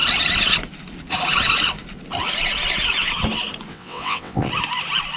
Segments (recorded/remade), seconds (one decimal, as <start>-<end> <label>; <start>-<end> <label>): 0.0-3.7 recorded; 3.7-4.5 remade; 4.5-5.2 recorded